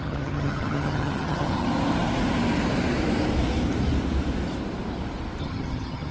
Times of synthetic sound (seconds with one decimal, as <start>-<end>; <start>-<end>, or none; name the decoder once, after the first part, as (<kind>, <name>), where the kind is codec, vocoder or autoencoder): 0.0-1.7 (vocoder, HiFi-GAN); 5.4-6.1